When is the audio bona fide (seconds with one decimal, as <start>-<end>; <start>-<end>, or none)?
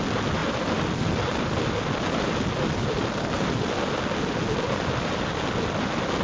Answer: 0.0-6.2